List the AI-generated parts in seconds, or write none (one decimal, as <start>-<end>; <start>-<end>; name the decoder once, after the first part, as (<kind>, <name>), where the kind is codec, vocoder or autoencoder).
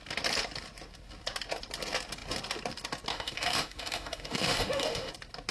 3.1-5.1 (autoencoder, DAC-VAE)